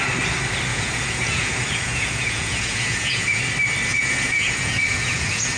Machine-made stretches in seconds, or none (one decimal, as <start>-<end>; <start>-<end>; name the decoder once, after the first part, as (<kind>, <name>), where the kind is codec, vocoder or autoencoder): 0.7-3.4 (vocoder, Vocos); 3.9-5.6